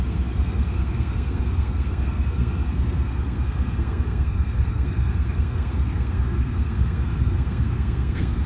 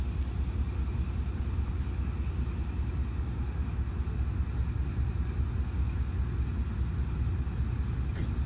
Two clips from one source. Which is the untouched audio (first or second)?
second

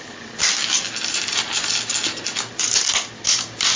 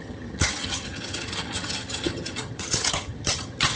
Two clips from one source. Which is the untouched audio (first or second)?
first